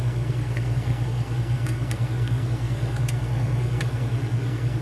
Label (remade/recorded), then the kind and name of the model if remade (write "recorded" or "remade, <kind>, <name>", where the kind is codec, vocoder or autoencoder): remade, codec, SNAC